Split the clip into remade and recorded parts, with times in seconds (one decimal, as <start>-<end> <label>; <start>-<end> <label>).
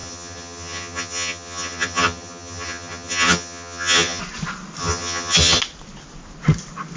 0.0-4.2 remade; 4.2-4.8 recorded; 4.8-5.6 remade; 5.6-7.0 recorded